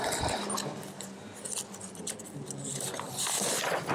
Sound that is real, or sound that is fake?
real